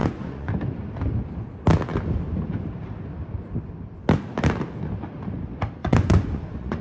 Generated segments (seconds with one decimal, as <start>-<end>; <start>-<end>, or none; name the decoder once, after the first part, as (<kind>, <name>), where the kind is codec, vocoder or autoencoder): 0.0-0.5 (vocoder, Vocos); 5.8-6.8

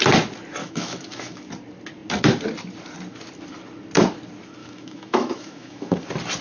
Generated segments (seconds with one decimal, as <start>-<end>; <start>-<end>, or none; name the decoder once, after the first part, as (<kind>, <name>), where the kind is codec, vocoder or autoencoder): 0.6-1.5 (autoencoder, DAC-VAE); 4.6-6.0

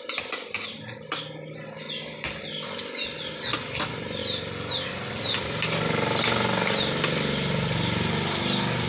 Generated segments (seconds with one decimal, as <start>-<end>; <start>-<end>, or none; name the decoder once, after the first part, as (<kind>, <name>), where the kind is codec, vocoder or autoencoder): none

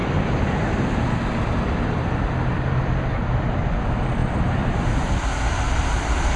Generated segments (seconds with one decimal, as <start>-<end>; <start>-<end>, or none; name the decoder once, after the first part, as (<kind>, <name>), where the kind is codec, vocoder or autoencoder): 3.8-6.4 (vocoder, BigVGAN v2)